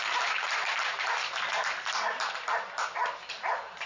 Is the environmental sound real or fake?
real